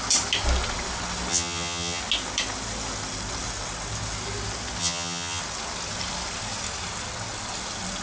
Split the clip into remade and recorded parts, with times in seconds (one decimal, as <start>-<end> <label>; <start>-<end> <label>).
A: 0.0-1.3 recorded; 1.3-2.0 remade; 2.0-4.8 recorded; 4.8-5.4 remade; 5.4-8.0 recorded